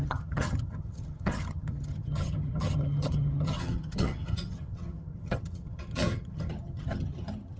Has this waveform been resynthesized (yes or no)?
yes